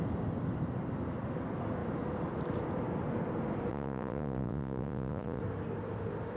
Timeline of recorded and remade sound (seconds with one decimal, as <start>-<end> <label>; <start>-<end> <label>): 0.0-3.7 recorded; 3.7-5.4 remade; 5.4-6.4 recorded